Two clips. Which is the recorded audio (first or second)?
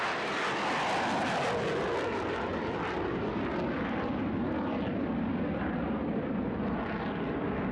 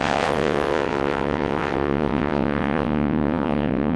first